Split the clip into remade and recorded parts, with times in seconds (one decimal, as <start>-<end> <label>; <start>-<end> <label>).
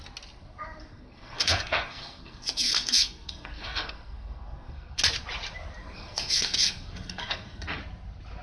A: 0.0-0.9 recorded; 0.9-5.0 remade; 5.0-5.8 recorded; 5.8-7.8 remade; 7.8-8.4 recorded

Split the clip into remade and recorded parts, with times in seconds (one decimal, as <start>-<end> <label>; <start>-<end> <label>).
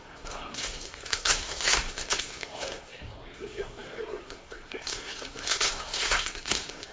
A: 0.0-6.9 remade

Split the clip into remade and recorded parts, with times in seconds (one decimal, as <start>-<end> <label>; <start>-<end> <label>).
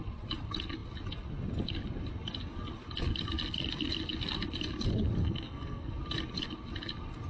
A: 0.0-5.2 recorded; 5.2-5.9 remade; 5.9-7.3 recorded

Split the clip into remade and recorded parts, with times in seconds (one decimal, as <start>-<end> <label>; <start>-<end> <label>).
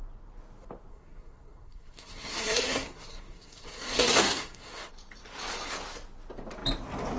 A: 0.0-0.9 recorded; 0.9-4.9 remade; 4.9-7.2 recorded